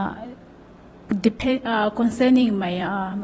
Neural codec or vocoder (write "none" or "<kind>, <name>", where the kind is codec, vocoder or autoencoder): vocoder, BigVGAN v2